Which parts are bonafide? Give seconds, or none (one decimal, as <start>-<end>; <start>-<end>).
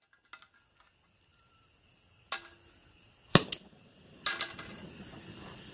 0.0-5.7